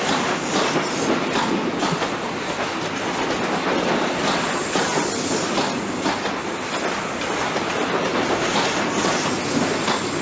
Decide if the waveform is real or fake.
real